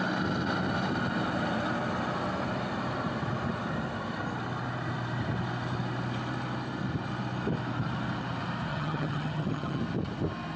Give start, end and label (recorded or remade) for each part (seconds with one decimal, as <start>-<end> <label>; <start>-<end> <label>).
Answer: 0.0-8.7 recorded; 8.7-9.8 remade; 9.8-10.6 recorded